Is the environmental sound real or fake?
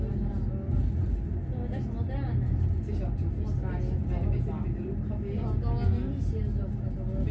real